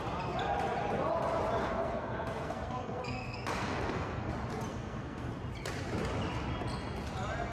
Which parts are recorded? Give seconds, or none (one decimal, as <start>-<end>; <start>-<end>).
0.0-1.6; 4.3-4.7; 5.3-7.5